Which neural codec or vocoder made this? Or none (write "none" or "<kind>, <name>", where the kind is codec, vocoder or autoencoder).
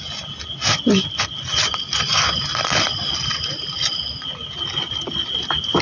none